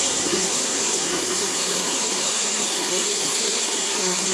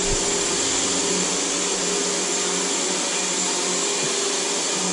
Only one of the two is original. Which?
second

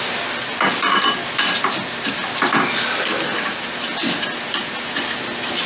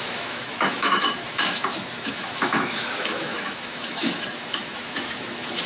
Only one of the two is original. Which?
first